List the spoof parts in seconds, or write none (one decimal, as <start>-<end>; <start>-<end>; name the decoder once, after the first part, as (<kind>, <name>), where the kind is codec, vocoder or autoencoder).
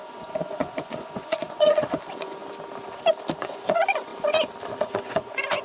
0.0-2.4 (vocoder, Vocos); 3.4-4.1; 4.8-5.6